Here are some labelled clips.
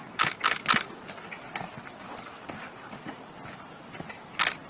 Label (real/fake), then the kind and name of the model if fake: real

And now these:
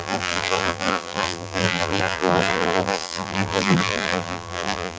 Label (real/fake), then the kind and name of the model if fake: fake, vocoder, BigVGAN v2